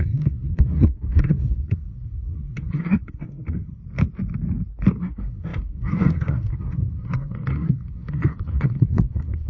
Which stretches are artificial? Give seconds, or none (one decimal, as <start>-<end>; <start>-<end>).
0.0-3.8; 5.0-9.5